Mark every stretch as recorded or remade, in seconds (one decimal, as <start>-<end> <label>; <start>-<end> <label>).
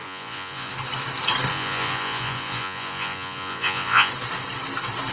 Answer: 0.0-0.7 remade; 0.7-1.5 recorded; 1.5-4.1 remade; 4.1-5.1 recorded